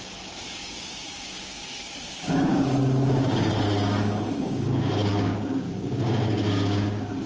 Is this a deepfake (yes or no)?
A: yes